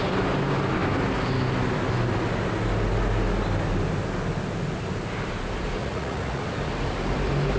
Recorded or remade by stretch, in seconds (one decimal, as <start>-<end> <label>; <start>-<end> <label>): 0.0-5.8 recorded; 5.8-6.4 remade; 6.4-7.6 recorded